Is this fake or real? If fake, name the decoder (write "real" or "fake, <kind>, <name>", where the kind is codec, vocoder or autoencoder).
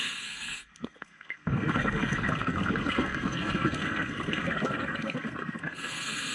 fake, codec, SNAC